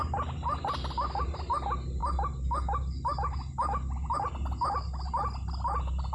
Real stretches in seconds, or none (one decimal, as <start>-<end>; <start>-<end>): 0.0-6.1